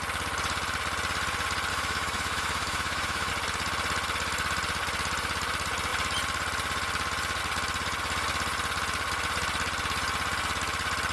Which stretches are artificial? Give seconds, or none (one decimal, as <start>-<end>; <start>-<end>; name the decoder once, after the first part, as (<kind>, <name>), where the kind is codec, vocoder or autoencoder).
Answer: 1.7-3.3 (autoencoder, DAC-VAE)

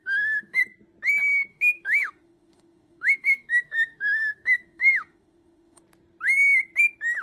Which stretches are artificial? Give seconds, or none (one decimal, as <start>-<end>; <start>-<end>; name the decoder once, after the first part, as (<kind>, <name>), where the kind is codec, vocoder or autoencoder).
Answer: 0.0-0.6 (autoencoder, DAC-VAE); 1.5-5.8

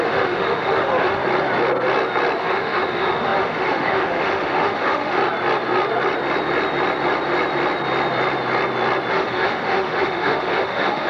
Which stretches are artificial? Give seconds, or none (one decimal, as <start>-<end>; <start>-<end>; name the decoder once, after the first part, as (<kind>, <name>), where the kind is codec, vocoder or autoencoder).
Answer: 0.0-1.2 (autoencoder, DAC-VAE); 2.4-5.2; 9.1-11.1

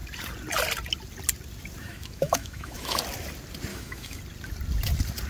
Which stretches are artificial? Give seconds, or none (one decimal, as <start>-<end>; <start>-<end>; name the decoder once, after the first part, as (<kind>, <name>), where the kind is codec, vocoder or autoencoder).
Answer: 1.8-3.0 (autoencoder, DAC-VAE); 3.7-4.2

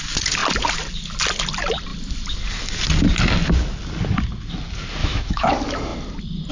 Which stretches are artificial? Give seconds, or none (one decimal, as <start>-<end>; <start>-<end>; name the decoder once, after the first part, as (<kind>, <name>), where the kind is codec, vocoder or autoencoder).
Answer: 5.0-5.5 (autoencoder, DAC-VAE)

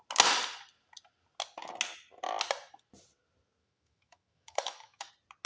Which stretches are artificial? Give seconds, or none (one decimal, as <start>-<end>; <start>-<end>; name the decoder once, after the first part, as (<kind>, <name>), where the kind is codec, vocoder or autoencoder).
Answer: 3.6-5.1 (autoencoder, DAC-VAE)

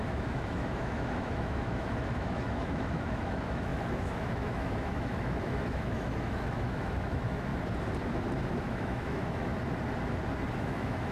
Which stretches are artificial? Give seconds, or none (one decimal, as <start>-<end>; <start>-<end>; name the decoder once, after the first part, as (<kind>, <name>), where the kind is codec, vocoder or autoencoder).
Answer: 0.0-7.5 (autoencoder, DAC-VAE); 8.6-9.5; 10.6-11.1

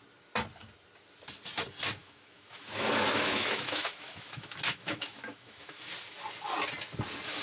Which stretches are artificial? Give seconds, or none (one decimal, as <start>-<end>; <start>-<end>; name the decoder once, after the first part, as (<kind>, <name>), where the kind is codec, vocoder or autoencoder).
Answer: 2.0-5.9 (autoencoder, DAC-VAE)